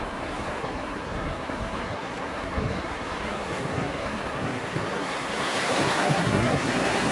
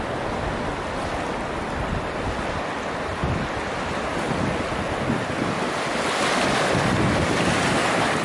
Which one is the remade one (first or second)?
first